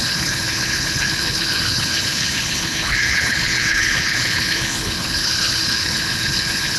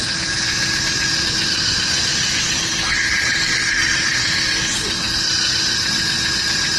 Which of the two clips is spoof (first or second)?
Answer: first